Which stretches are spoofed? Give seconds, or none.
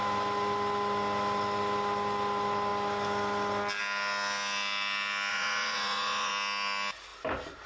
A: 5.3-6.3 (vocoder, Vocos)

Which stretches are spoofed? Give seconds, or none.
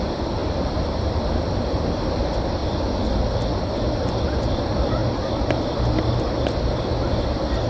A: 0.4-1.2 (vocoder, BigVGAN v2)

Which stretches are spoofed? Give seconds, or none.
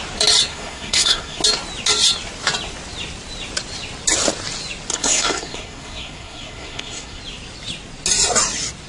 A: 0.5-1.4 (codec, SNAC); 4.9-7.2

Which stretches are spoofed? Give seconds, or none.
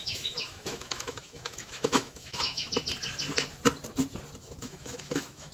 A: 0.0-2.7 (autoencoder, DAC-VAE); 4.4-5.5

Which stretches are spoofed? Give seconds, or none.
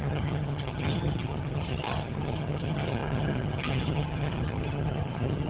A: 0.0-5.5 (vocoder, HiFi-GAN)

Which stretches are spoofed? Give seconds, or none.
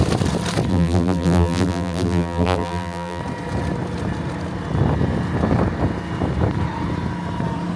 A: 0.7-3.2 (vocoder, BigVGAN v2)